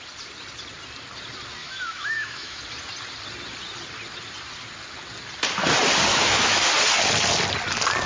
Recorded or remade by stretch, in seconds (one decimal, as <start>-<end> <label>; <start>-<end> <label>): 0.0-1.6 recorded; 1.6-2.6 remade; 2.6-6.1 recorded; 6.1-6.7 remade; 6.7-8.1 recorded